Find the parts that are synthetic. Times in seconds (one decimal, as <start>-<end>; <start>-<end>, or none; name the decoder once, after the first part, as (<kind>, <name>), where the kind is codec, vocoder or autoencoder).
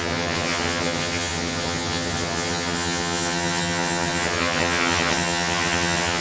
0.0-6.2 (vocoder, HiFi-GAN)